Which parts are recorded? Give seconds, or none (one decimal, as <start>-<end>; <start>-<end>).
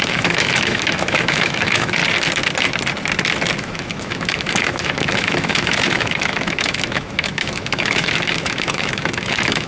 2.0-3.6